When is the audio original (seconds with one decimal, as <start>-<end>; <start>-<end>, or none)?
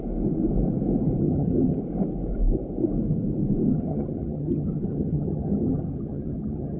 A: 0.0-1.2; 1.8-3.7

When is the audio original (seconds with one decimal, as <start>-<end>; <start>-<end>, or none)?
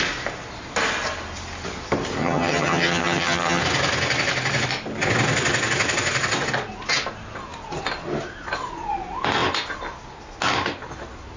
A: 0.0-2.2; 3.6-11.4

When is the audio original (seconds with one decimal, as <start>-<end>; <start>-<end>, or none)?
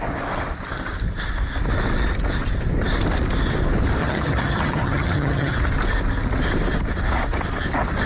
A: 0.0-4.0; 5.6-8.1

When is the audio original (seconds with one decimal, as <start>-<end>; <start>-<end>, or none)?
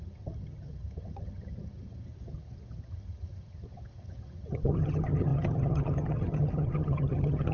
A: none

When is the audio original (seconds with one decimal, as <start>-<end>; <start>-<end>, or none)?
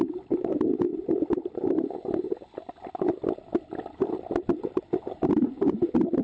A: 0.0-6.2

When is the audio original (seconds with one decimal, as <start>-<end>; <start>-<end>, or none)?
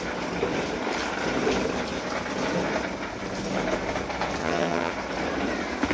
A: 0.0-4.4; 4.9-5.9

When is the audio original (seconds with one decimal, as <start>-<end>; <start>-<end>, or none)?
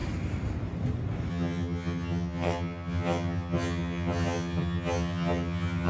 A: 0.0-1.3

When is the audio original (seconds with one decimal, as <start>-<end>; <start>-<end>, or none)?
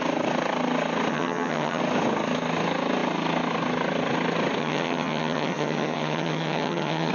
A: 0.0-1.1; 1.8-4.6